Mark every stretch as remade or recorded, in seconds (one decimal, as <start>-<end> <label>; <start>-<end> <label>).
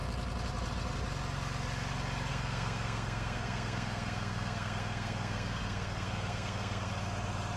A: 0.0-2.3 recorded; 2.3-6.9 remade; 6.9-7.6 recorded